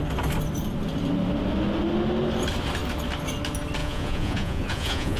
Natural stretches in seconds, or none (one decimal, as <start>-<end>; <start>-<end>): 0.0-3.8

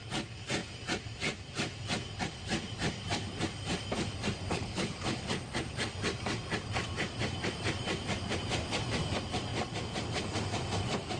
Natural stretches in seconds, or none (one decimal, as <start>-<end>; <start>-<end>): 0.0-4.5; 5.2-11.2

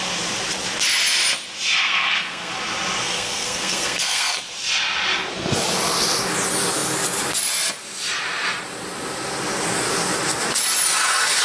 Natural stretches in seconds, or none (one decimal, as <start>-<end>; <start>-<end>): 0.0-1.8; 2.5-3.0; 4.4-11.4

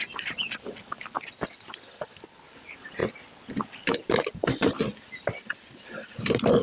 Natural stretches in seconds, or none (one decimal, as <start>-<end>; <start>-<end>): 0.0-6.6

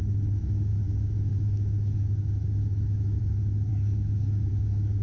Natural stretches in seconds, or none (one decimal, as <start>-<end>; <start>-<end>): none

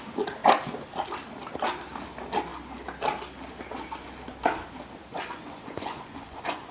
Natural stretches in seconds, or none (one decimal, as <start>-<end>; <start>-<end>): 0.0-5.0